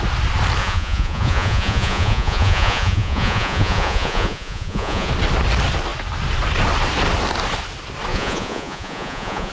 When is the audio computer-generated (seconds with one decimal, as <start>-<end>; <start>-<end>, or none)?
0.6-5.1; 8.1-9.5